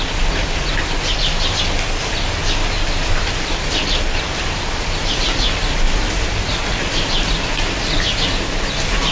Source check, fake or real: real